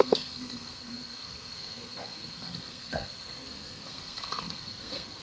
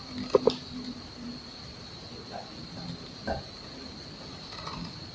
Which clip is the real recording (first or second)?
second